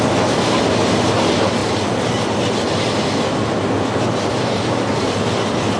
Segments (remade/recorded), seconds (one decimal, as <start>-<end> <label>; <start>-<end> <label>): 0.0-5.8 recorded